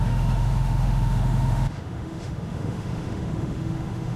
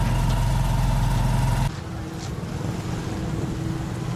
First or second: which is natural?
second